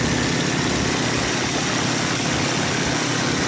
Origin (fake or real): real